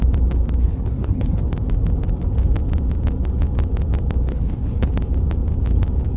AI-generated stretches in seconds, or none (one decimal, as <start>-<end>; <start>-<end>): 0.6-1.4; 4.3-4.9